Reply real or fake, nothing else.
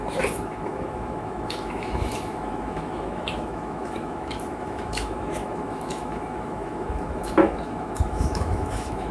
fake